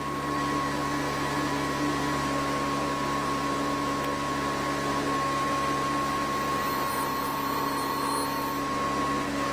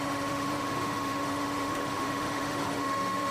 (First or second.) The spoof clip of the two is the second